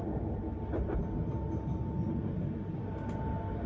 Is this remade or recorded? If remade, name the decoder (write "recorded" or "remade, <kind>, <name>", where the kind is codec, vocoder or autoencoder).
recorded